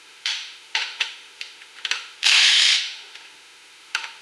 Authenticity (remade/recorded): remade